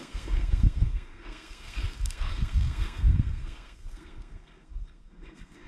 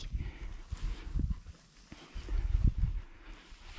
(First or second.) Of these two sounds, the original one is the second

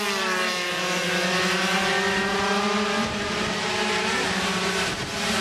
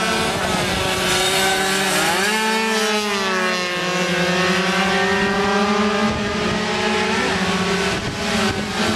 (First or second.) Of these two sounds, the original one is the second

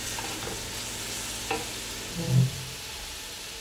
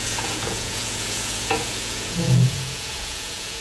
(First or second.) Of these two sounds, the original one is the first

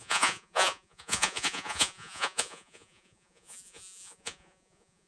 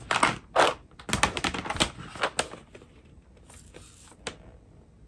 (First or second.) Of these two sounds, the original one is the second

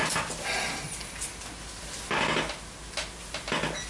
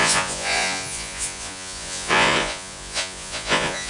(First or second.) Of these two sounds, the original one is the first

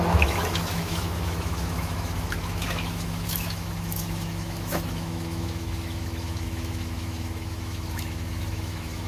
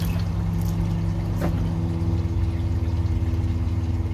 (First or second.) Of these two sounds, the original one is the second